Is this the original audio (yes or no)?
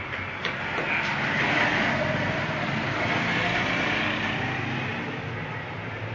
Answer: yes